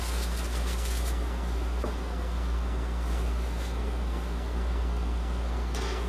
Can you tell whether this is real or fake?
fake